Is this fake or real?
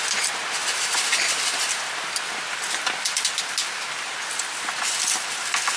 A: real